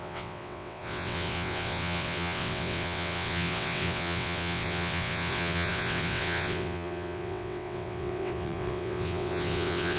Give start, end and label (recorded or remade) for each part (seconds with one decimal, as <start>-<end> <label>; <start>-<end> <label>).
0.0-10.0 remade